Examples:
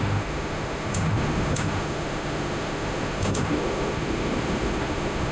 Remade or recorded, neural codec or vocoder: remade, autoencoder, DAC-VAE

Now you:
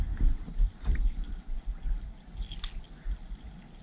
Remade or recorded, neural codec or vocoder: recorded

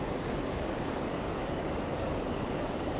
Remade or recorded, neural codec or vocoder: remade, codec, DAC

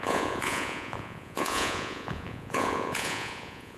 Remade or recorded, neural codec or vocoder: remade, vocoder, Vocos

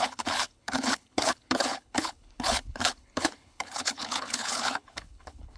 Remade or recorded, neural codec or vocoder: remade, codec, HILCodec